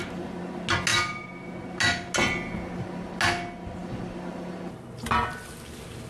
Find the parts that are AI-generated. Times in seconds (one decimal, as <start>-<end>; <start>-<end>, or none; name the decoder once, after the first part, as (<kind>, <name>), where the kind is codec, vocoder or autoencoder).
3.8-4.5 (vocoder, BigVGAN v2)